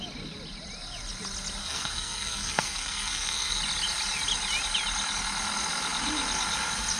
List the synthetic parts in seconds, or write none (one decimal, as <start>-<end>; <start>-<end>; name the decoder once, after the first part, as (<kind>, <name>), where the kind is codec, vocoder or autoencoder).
1.6-3.6 (codec, SNAC)